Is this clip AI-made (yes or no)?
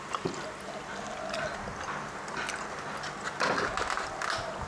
no